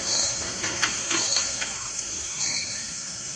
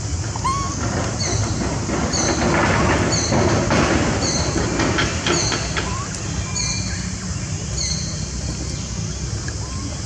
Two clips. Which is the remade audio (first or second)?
first